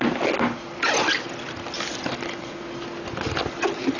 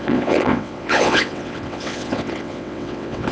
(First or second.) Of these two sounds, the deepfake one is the second